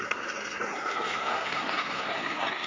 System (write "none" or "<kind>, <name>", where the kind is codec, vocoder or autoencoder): codec, SNAC